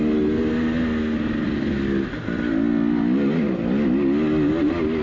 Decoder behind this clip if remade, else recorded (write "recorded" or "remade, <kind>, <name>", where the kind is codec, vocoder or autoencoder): recorded